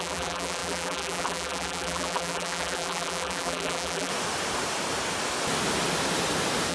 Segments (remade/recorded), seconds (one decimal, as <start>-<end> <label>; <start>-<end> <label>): 0.0-4.1 remade; 4.1-6.7 recorded